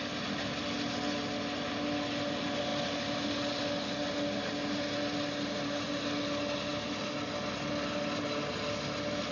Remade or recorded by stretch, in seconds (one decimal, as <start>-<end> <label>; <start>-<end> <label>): 0.0-9.3 recorded

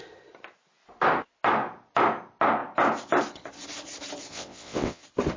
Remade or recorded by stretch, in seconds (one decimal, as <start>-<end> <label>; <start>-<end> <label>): 0.0-4.3 recorded; 4.3-5.0 remade; 5.0-5.4 recorded